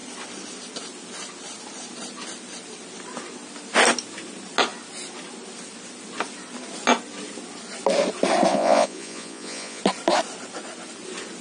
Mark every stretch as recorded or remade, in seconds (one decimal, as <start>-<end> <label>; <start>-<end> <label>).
0.0-8.5 recorded; 8.5-9.8 remade; 9.8-11.4 recorded